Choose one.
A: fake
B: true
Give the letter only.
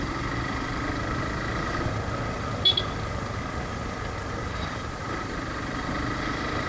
B